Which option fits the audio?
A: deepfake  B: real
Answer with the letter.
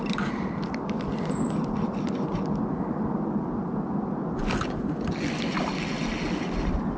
B